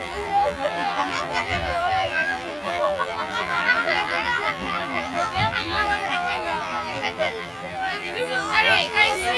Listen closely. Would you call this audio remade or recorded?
remade